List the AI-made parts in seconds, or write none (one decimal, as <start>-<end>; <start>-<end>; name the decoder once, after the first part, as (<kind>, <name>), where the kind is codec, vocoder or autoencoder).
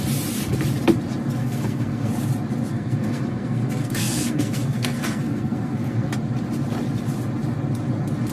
1.4-2.1 (codec, SNAC); 2.7-6.1